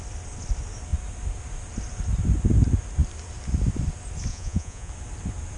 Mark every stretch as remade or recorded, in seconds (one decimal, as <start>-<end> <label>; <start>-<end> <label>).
0.0-4.3 recorded; 4.3-4.9 remade; 4.9-5.6 recorded